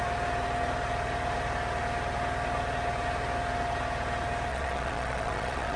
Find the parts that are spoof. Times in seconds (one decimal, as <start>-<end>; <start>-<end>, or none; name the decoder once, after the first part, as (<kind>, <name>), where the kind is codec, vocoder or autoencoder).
4.5-5.8 (vocoder, Vocos)